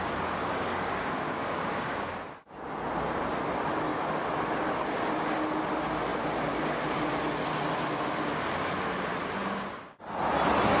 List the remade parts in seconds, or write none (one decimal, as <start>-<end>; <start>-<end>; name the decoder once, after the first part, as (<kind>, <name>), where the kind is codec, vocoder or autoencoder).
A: 0.4-2.0 (codec, DAC)